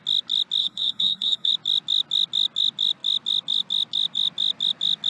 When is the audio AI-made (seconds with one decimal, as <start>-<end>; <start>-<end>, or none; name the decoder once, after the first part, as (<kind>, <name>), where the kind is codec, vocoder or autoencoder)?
0.6-1.5 (codec, SNAC)